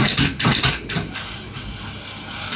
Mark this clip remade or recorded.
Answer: recorded